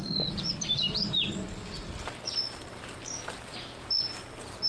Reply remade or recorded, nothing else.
recorded